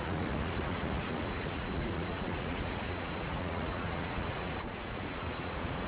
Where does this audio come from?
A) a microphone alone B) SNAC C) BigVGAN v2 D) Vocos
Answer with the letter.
D